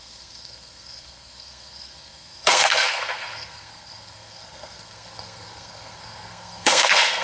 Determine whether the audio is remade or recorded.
remade